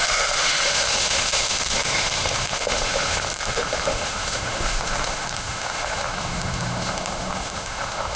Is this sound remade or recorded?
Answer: remade